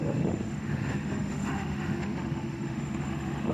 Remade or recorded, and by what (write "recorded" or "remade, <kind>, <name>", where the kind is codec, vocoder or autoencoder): remade, autoencoder, DAC-VAE